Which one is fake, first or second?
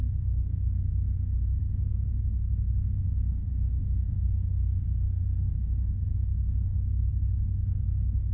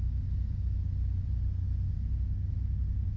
first